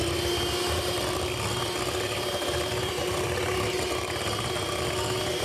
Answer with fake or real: real